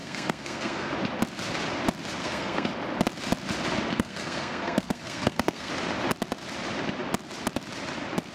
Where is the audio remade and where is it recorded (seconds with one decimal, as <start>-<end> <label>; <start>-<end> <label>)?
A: 0.0-0.9 remade; 0.9-2.2 recorded; 2.2-2.7 remade; 2.7-3.9 recorded; 3.9-5.7 remade; 5.7-8.3 recorded